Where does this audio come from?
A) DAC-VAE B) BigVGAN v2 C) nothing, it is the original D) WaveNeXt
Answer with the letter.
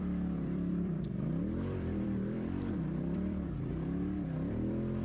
B